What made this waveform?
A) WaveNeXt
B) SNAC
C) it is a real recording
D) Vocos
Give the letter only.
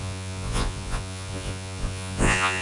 D